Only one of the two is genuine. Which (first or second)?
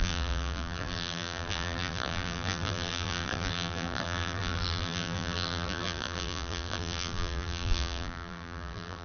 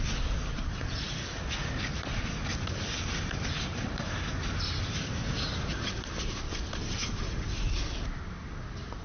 second